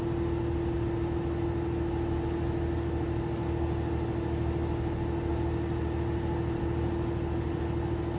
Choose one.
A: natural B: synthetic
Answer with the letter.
A